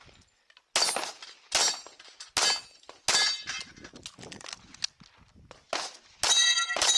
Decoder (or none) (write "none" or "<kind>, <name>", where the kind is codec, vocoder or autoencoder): none